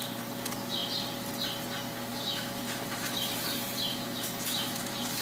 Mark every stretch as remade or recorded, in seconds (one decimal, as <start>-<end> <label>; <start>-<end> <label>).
0.0-2.1 recorded; 2.1-3.2 remade; 3.2-3.9 recorded; 3.9-5.2 remade